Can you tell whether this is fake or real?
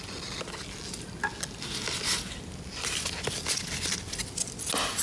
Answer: real